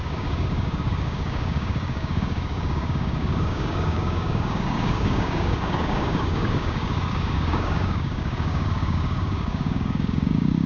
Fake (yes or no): yes